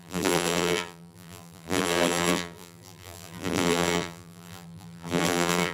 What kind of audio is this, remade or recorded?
remade